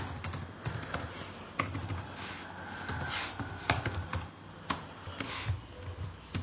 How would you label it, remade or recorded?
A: recorded